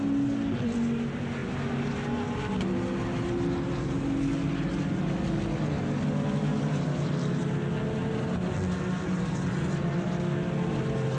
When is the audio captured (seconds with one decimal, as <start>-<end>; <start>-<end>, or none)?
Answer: 0.0-11.2